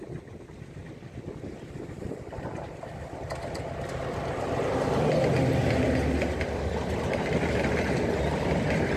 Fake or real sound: real